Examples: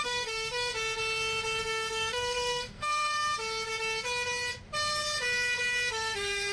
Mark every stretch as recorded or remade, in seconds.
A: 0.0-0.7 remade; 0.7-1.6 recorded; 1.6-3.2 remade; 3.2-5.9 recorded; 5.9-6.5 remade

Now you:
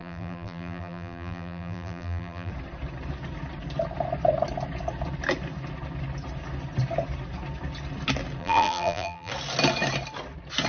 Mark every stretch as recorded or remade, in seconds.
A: 0.0-2.5 remade; 2.5-8.4 recorded; 8.4-9.3 remade; 9.3-10.7 recorded

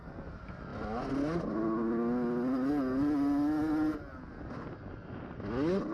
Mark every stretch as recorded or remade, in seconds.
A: 0.0-5.9 recorded

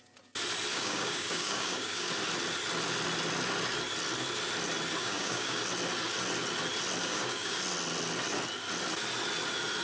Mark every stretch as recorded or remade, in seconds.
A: 0.0-0.7 recorded; 0.7-2.1 remade; 2.1-5.0 recorded; 5.0-5.6 remade; 5.6-7.0 recorded; 7.0-7.6 remade; 7.6-9.8 recorded

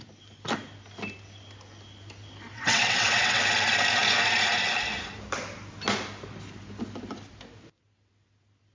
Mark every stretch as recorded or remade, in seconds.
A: 0.0-2.5 recorded; 2.5-3.4 remade; 3.4-8.7 recorded